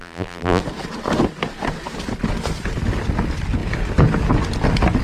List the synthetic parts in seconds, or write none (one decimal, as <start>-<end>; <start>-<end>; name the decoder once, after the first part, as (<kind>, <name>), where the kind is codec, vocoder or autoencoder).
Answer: 0.0-0.6 (vocoder, BigVGAN v2)